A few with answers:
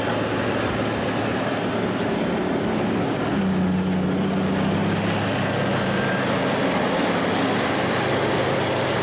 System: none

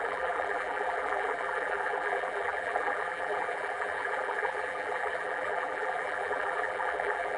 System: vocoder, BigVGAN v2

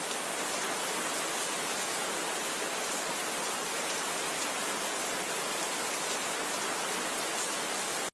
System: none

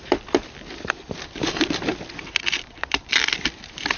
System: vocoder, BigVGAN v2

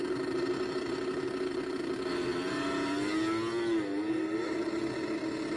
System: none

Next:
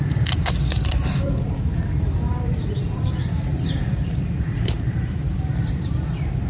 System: vocoder, BigVGAN v2